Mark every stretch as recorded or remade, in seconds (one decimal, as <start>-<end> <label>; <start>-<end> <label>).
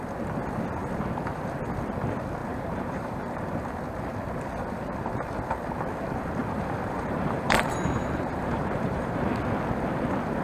0.0-2.4 recorded; 2.4-3.4 remade; 3.4-6.4 recorded; 6.4-9.3 remade; 9.3-10.4 recorded